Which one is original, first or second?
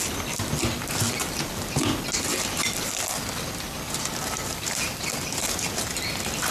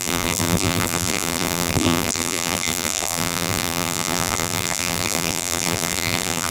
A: first